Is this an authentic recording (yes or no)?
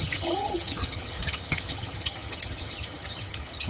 no